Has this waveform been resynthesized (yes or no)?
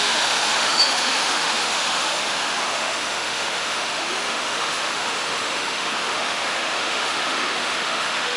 yes